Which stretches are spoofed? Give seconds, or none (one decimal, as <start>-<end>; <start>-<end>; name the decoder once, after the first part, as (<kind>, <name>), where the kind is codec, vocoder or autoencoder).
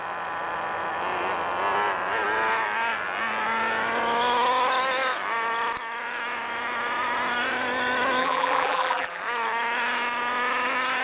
8.2-9.2 (vocoder, BigVGAN v2)